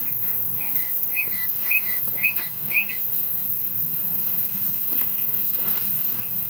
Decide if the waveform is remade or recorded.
remade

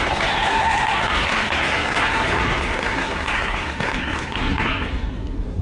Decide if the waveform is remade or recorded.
remade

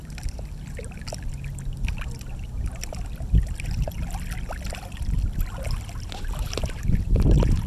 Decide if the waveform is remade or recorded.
recorded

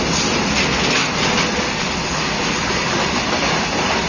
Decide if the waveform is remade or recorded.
recorded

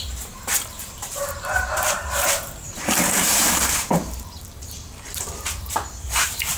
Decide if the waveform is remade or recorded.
remade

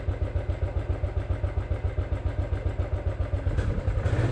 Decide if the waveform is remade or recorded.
recorded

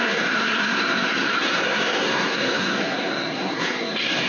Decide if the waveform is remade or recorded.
remade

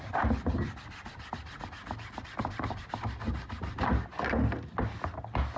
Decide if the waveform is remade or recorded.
recorded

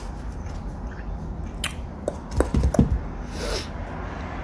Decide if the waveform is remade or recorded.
recorded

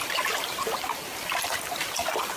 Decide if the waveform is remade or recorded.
recorded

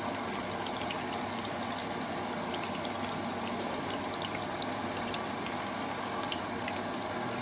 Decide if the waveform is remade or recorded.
recorded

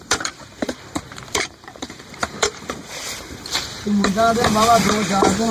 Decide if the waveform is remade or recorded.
remade